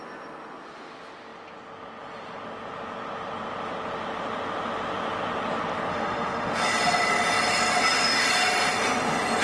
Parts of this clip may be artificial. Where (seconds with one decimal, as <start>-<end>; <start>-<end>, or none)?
5.9-6.5